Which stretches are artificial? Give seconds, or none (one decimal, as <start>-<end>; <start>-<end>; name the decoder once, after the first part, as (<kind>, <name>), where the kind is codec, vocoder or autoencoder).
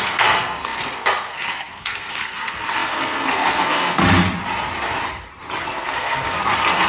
0.0-4.0 (codec, SNAC); 5.6-6.9